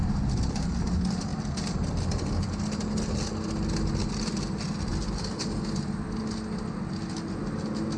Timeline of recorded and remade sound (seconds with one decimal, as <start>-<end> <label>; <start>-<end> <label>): 0.0-8.0 recorded